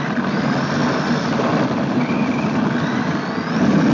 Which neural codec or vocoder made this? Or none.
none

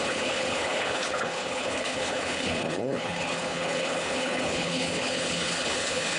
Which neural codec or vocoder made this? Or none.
codec, HILCodec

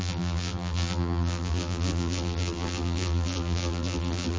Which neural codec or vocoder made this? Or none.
vocoder, BigVGAN v2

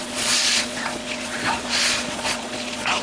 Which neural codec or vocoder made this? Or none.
vocoder, Vocos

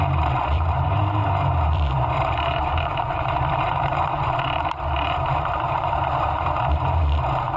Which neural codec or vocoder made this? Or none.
vocoder, BigVGAN v2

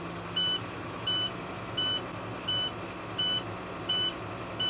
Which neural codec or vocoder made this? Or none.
none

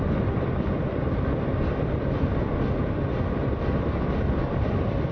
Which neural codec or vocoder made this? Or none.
vocoder, BigVGAN v2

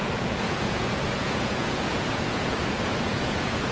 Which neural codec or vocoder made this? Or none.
vocoder, Vocos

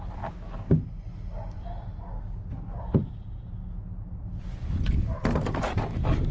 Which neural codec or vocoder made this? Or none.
none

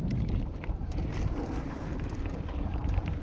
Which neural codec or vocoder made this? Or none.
vocoder, BigVGAN v2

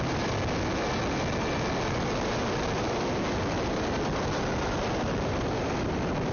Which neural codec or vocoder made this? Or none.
none